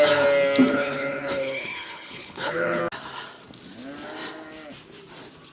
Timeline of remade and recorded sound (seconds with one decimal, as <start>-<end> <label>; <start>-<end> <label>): 0.0-0.7 recorded; 0.7-2.8 remade; 2.8-5.5 recorded